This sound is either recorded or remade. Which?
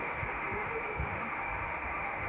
remade